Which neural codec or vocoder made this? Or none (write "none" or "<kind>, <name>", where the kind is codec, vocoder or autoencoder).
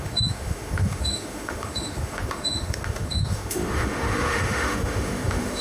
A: autoencoder, DAC-VAE